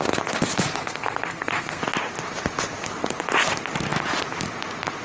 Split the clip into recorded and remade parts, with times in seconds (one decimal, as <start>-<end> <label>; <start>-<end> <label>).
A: 0.0-0.8 recorded; 0.8-1.8 remade; 1.8-5.0 recorded